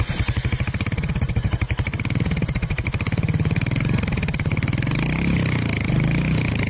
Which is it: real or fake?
real